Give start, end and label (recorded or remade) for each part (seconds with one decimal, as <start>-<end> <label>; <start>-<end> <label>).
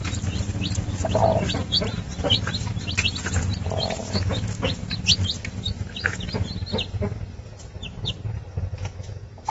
0.0-4.0 recorded; 4.0-4.8 remade; 4.8-8.5 recorded; 8.5-9.5 remade